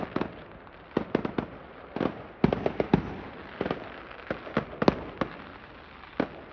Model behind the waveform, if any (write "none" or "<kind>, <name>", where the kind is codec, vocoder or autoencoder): none